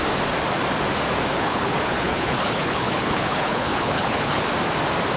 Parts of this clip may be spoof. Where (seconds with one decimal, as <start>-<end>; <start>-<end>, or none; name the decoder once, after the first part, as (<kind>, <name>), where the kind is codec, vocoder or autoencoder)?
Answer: 1.3-4.4 (codec, HILCodec)